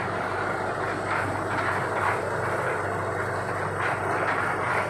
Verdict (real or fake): real